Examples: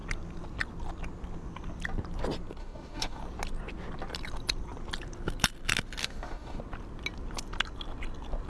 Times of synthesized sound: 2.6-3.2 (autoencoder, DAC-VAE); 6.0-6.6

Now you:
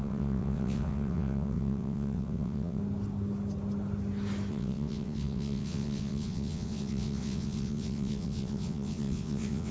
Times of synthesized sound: 0.0-2.8 (vocoder, WaveNeXt); 4.5-9.7

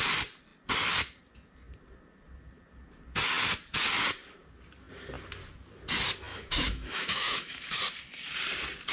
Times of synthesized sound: 6.3-7.8 (autoencoder, DAC-VAE)

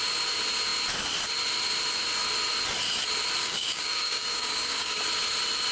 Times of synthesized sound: 3.4-5.0 (codec, DAC)

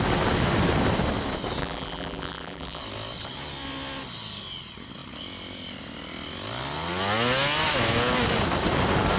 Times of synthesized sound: 1.6-2.8 (vocoder, BigVGAN v2)

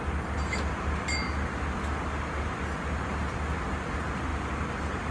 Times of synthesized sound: none